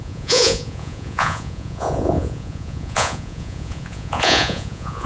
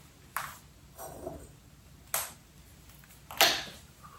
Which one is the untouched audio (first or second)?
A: second